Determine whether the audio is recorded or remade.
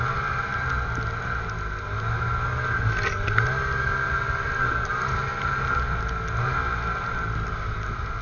recorded